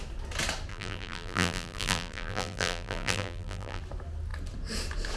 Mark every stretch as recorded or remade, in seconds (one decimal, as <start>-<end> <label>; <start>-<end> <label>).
0.0-0.7 recorded; 0.7-3.8 remade; 3.8-5.2 recorded